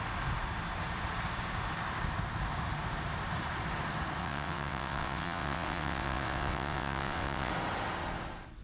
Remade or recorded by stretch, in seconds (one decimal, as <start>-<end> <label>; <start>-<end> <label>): 0.0-4.2 recorded; 4.2-7.5 remade; 7.5-8.6 recorded